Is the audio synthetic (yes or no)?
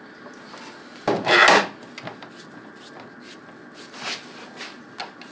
no